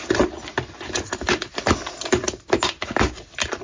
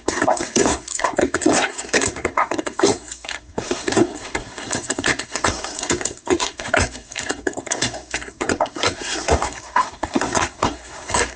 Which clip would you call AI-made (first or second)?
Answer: second